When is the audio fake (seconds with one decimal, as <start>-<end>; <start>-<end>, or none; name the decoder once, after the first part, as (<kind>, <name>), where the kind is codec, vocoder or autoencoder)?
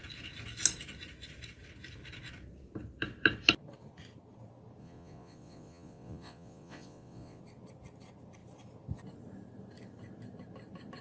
4.8-7.4 (vocoder, Vocos)